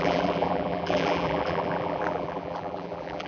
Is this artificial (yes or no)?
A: yes